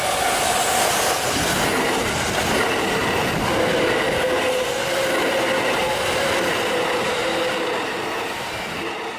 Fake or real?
real